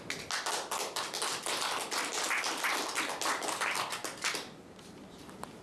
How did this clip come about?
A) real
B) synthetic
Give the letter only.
A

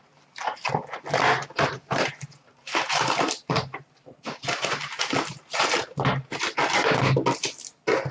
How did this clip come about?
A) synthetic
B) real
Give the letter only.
B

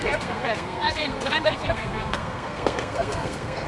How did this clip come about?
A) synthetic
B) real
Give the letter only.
A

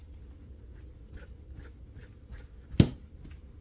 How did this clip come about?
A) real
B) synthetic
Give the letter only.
A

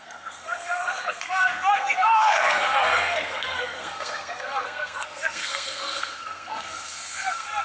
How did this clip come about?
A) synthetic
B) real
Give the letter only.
A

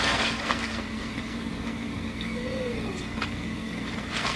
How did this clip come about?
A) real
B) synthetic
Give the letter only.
B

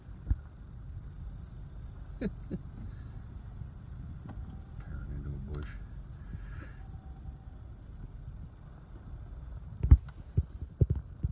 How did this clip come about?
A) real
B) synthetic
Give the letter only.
A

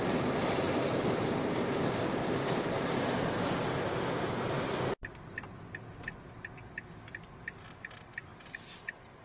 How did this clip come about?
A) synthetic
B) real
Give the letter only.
B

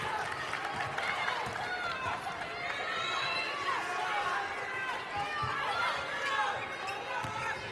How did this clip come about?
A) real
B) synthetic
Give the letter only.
A